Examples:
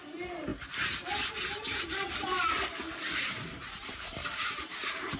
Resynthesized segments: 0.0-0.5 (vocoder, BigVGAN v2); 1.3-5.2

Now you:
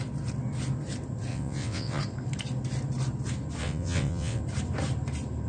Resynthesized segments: 1.3-2.0 (vocoder, WaveNeXt); 3.6-4.4

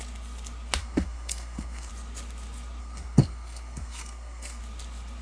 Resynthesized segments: 0.8-1.9 (codec, SNAC); 2.8-4.6

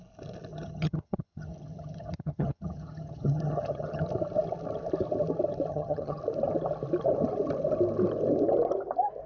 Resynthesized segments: 0.5-4.0 (vocoder, HiFi-GAN); 5.7-6.2